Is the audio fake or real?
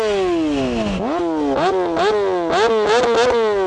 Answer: real